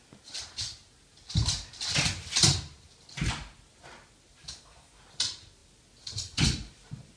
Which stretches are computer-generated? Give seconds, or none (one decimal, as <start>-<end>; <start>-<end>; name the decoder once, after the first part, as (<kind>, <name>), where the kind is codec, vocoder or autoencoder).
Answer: 4.4-5.0 (codec, DAC)